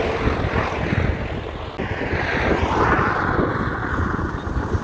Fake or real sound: real